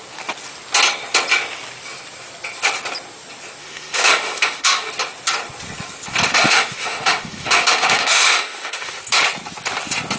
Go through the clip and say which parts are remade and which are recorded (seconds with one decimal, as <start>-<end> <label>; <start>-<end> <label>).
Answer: 0.0-3.6 recorded; 3.6-4.9 remade; 4.9-6.3 recorded; 6.3-9.0 remade; 9.0-10.2 recorded